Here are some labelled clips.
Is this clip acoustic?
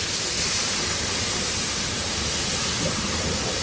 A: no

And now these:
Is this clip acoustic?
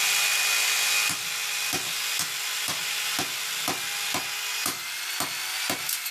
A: yes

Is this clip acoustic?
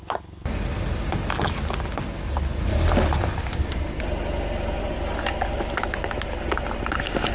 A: yes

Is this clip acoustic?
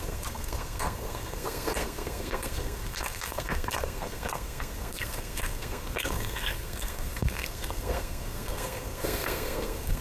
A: no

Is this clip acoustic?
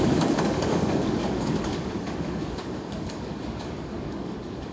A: no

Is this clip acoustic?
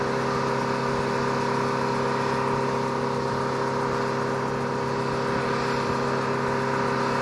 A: yes